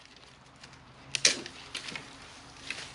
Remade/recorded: recorded